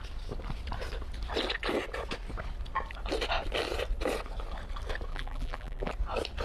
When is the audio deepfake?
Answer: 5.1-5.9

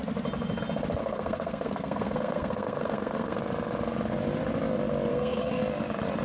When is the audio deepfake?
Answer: 1.0-3.4; 5.1-5.6

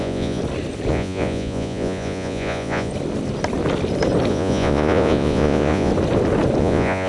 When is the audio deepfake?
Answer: 0.0-0.4; 0.9-2.9; 4.3-5.9; 6.6-7.1